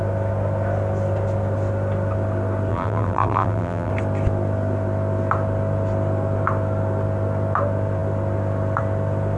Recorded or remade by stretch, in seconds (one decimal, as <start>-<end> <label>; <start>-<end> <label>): 0.0-2.7 recorded; 2.7-3.9 remade; 3.9-9.4 recorded